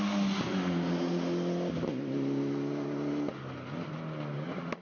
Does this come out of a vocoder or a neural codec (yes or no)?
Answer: no